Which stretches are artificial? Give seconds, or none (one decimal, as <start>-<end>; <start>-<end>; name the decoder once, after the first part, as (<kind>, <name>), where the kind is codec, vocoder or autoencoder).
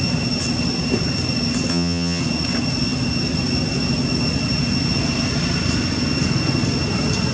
1.7-2.2 (vocoder, HiFi-GAN)